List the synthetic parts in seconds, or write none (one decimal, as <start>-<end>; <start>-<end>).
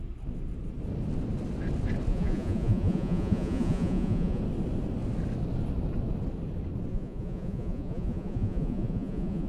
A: 2.1-4.4; 6.9-9.5